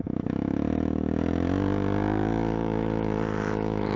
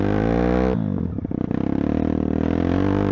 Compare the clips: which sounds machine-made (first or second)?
first